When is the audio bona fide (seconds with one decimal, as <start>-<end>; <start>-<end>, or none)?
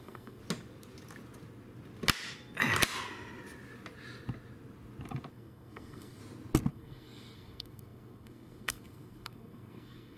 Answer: 0.4-5.3; 6.2-6.7